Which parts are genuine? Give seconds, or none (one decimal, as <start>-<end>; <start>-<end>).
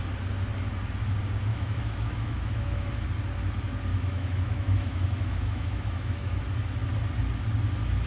0.0-1.5; 2.9-3.9; 6.4-8.1